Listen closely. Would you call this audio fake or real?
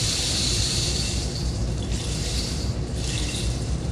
fake